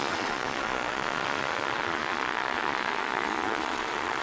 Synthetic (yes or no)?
yes